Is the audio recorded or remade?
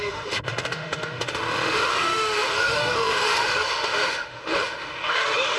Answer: remade